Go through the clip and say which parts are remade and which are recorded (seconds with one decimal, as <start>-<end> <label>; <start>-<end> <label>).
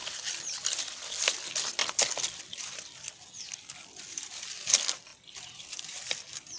0.0-6.6 recorded